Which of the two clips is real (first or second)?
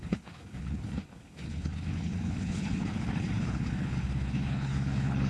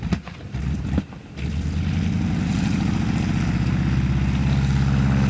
second